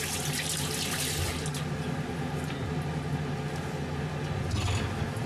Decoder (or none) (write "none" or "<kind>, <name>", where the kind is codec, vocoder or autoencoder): none